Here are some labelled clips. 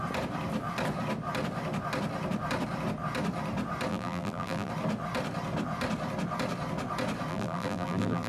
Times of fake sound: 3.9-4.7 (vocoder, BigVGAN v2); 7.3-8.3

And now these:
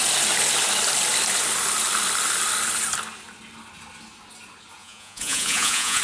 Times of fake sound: 4.8-6.0 (vocoder, Vocos)

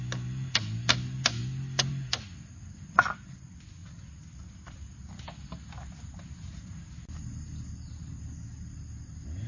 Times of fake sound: none

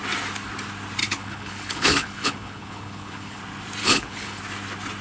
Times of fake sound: 1.0-3.4 (codec, HILCodec); 3.8-4.4

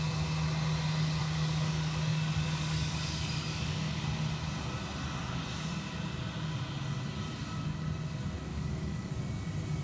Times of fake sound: 1.2-4.0 (codec, DAC); 8.5-9.1

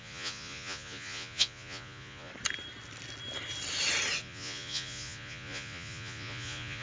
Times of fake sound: 0.0-2.3 (vocoder, Vocos); 4.2-6.8